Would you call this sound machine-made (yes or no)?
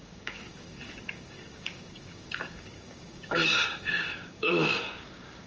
yes